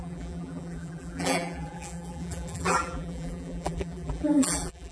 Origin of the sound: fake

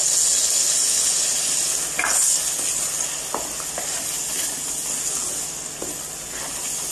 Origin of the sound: real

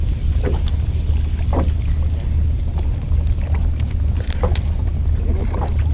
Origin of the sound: real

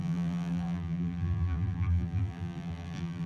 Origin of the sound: fake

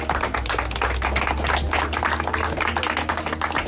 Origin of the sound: real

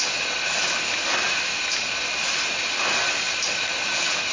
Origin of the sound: real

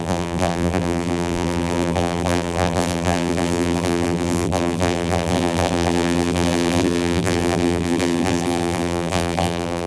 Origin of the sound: fake